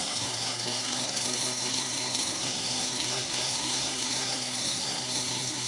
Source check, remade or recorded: remade